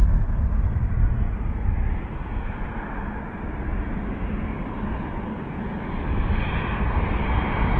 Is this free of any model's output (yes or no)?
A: yes